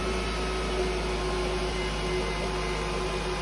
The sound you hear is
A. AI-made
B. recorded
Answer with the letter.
B